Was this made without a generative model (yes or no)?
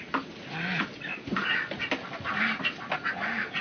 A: yes